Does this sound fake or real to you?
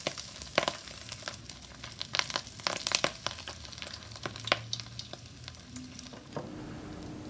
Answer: real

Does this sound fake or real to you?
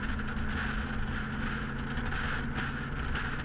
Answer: real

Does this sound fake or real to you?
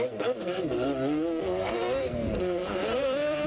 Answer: fake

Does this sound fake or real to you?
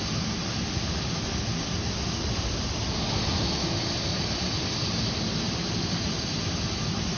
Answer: real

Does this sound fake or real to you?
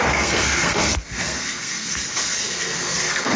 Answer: fake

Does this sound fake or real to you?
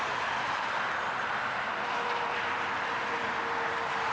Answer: real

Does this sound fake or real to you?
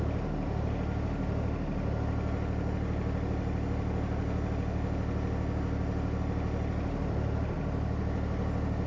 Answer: real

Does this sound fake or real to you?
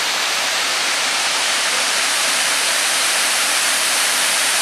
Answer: fake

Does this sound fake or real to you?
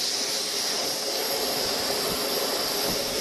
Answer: real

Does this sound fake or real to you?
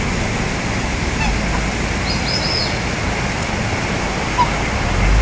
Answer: real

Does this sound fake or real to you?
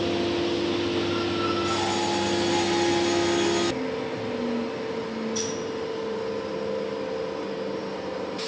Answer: real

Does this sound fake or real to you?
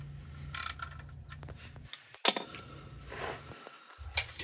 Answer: real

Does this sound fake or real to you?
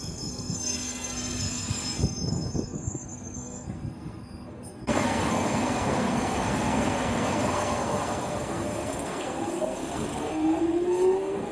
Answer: fake